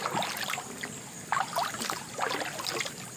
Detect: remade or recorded recorded